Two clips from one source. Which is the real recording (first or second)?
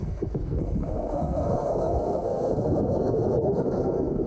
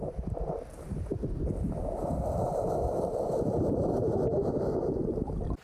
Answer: second